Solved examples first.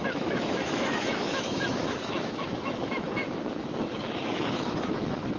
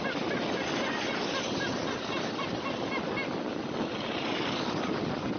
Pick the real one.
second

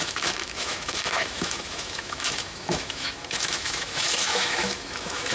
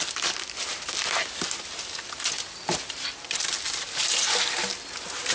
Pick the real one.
second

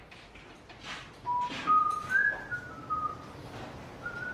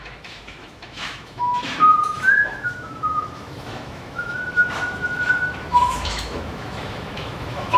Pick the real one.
first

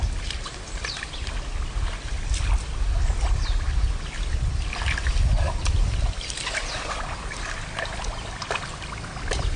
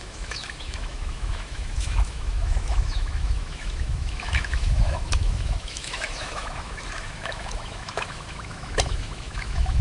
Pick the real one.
first